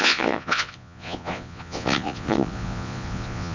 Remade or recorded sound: remade